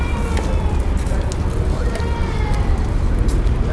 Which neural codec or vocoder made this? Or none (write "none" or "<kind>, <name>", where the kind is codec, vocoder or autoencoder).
none